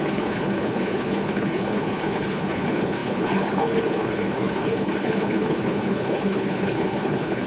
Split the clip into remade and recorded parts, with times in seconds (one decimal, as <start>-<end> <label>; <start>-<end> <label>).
0.0-7.5 remade

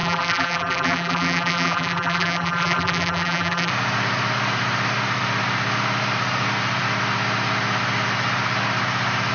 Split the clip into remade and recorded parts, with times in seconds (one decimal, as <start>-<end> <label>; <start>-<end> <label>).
0.0-3.7 remade; 3.7-9.3 recorded